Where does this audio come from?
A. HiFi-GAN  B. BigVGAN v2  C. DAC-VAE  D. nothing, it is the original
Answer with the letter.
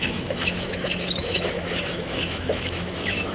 C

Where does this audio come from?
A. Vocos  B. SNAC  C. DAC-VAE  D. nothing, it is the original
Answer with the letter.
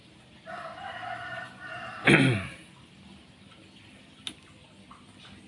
D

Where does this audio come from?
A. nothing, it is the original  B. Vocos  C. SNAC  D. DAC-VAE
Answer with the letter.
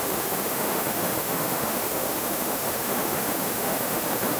D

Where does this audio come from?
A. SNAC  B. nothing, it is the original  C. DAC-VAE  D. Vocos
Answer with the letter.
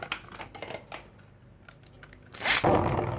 B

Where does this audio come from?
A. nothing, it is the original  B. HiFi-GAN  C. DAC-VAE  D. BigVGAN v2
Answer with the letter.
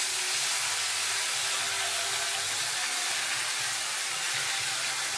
A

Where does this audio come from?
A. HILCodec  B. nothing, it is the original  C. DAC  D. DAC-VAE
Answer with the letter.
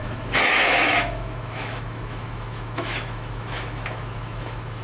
D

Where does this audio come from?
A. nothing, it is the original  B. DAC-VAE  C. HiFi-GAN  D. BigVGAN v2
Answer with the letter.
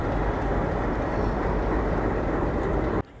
A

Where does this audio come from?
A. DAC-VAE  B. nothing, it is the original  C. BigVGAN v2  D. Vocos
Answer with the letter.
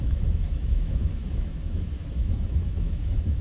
A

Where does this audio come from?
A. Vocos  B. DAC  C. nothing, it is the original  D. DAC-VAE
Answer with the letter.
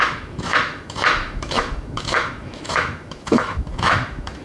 D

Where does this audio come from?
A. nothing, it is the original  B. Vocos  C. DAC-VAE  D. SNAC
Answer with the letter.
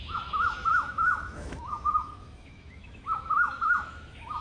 C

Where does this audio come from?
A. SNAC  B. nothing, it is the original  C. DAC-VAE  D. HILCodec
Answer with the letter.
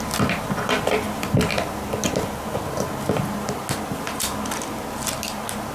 B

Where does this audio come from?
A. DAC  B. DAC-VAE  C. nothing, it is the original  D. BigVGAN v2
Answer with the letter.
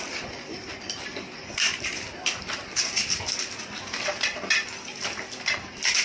C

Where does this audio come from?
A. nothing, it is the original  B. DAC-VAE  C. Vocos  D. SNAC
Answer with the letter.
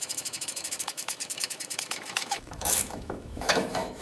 B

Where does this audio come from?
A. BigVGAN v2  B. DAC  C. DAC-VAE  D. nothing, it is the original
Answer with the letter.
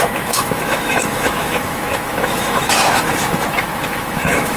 C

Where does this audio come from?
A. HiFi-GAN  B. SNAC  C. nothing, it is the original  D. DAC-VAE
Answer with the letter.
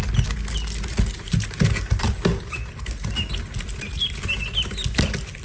C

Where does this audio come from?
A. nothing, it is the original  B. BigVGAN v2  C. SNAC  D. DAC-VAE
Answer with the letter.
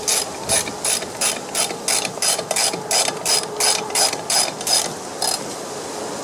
A